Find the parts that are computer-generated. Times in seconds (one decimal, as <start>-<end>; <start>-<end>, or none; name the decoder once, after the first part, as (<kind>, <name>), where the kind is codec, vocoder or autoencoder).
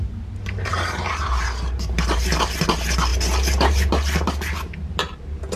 0.7-2.3 (vocoder, BigVGAN v2); 3.1-3.9